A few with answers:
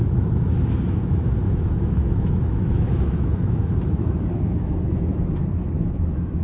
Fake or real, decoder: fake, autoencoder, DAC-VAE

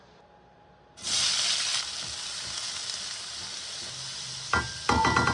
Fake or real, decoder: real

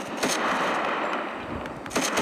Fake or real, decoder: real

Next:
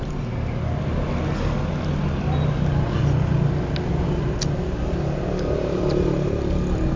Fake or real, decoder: real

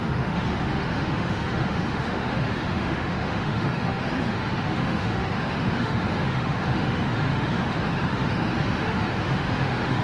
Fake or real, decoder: fake, autoencoder, DAC-VAE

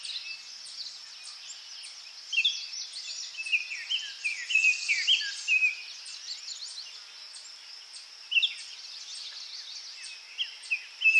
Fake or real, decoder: real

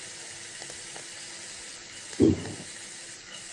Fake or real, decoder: real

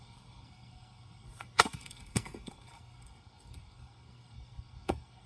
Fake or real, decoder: fake, codec, SNAC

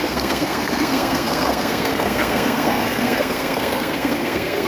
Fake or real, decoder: fake, codec, SNAC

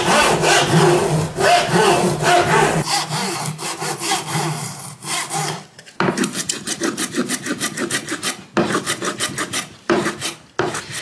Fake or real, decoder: real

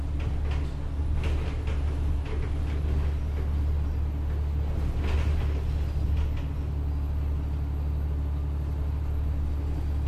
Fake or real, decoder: real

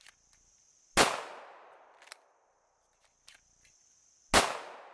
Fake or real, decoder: real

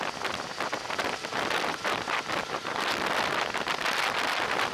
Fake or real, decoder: fake, vocoder, BigVGAN v2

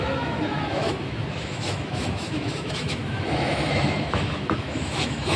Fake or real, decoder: fake, autoencoder, DAC-VAE